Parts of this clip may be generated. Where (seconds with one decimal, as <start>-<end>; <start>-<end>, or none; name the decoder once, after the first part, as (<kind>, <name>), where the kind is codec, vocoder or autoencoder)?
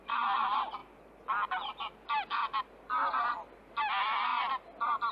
none